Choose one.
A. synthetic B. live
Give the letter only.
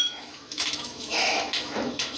A